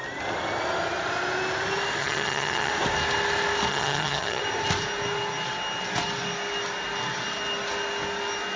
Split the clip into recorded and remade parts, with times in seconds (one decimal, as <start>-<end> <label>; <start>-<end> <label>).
0.0-2.0 recorded; 2.0-2.7 remade; 2.7-3.7 recorded; 3.7-4.4 remade; 4.4-8.6 recorded